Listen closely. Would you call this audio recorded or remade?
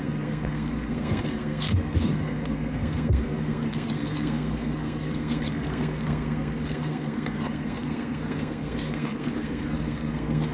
remade